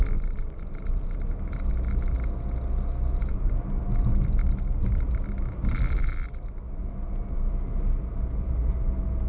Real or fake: real